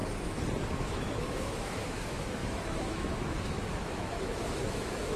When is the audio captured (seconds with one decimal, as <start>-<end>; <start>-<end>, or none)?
0.0-0.7